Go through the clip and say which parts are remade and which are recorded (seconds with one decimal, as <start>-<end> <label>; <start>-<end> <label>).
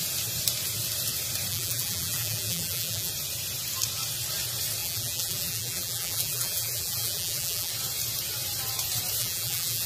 0.0-1.5 recorded; 1.5-3.1 remade; 3.1-4.8 recorded; 4.8-7.7 remade; 7.7-9.2 recorded; 9.2-9.9 remade